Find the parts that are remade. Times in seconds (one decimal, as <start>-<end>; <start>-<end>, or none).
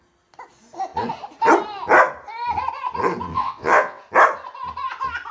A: 3.3-4.0